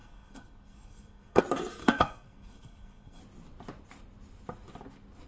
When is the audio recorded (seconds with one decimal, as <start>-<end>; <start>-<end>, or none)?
1.4-1.8; 3.2-5.3